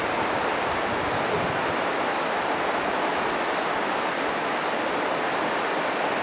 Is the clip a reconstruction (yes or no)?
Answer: no